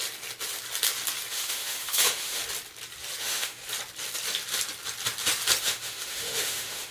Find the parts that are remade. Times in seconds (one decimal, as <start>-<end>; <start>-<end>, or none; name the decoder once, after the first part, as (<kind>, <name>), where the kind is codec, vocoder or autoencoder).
1.3-2.4 (autoencoder, DAC-VAE); 3.2-3.6; 5.6-6.9